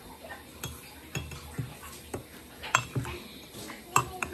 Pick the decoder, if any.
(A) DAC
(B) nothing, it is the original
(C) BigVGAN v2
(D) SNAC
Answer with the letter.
B